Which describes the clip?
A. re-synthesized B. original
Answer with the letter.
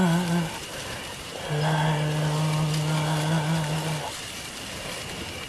B